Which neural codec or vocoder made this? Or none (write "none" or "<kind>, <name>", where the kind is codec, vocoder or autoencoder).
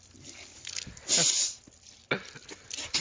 none